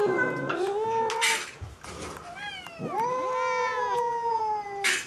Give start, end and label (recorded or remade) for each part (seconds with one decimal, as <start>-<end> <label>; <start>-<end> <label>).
0.0-3.6 recorded; 3.6-4.4 remade; 4.4-5.1 recorded